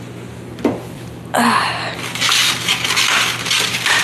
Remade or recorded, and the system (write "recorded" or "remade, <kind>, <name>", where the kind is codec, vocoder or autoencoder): recorded